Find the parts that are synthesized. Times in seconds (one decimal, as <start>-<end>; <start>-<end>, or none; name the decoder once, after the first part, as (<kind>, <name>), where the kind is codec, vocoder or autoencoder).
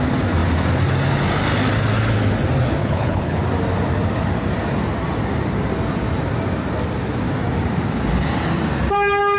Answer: 2.8-3.4 (codec, HILCodec)